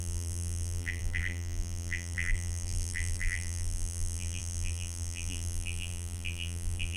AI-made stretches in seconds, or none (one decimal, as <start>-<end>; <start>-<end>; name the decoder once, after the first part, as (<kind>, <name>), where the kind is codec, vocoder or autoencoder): 0.0-7.0 (vocoder, BigVGAN v2)